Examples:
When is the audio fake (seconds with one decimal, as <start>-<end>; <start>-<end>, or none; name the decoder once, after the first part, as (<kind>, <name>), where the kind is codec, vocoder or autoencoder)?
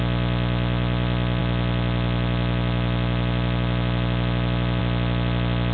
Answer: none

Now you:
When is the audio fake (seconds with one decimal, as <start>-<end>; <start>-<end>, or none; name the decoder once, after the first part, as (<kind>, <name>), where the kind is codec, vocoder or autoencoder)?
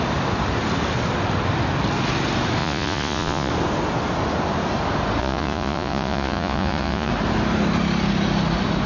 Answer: 2.6-3.5 (vocoder, Vocos); 5.2-7.1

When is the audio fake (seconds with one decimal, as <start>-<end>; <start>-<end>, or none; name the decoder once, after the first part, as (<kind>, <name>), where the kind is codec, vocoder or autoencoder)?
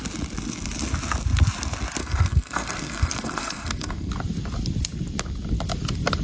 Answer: 2.0-4.1 (codec, SNAC)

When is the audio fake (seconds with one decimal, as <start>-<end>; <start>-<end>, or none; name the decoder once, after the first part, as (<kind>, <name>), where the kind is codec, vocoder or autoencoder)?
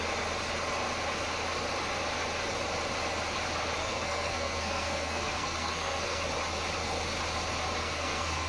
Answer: 3.8-6.2 (codec, SNAC); 7.8-8.5